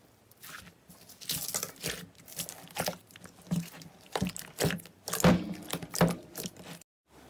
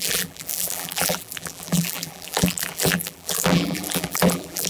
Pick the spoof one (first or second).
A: second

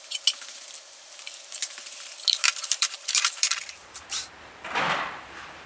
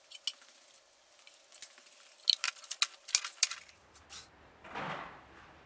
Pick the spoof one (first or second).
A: first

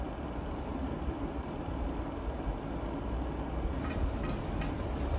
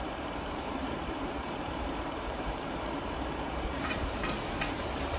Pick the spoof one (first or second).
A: second